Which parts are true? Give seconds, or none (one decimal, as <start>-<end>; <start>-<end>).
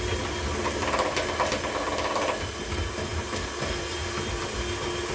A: 0.0-5.1